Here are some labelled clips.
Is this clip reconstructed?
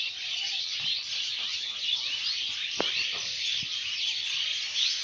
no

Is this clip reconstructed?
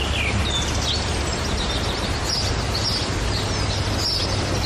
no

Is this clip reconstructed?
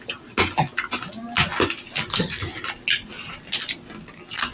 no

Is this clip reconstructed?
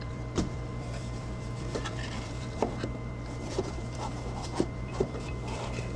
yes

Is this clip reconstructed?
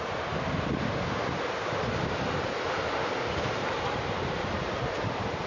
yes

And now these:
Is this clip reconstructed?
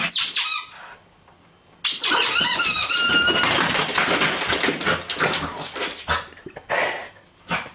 no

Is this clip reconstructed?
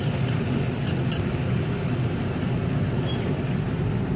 yes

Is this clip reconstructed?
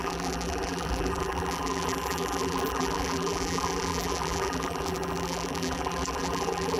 yes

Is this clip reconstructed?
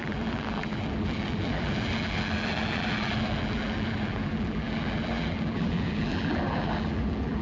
yes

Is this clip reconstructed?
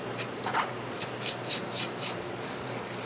yes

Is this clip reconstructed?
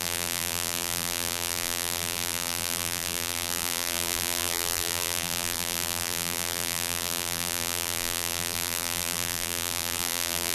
yes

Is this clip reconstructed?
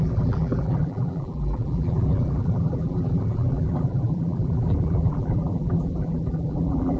yes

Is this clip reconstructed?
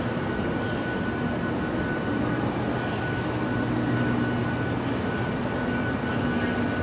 no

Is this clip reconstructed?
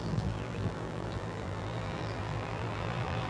yes